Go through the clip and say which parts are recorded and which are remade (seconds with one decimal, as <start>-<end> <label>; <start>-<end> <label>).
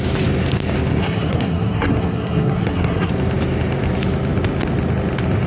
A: 0.0-1.0 recorded; 1.0-3.1 remade; 3.1-5.5 recorded